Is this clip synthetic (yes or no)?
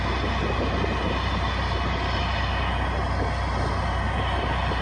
no